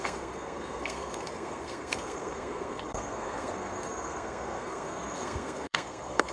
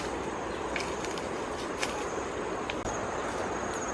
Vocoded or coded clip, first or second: first